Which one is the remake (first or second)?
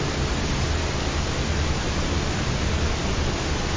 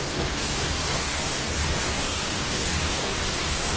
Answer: second